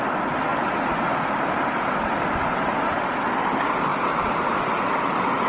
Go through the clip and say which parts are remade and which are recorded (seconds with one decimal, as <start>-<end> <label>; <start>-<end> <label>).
0.0-0.5 recorded; 0.5-3.0 remade; 3.0-5.5 recorded